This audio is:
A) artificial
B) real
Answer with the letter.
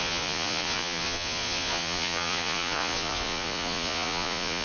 A